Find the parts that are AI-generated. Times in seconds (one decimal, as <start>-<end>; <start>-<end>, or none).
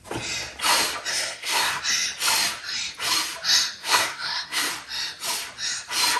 1.1-1.8; 3.8-4.7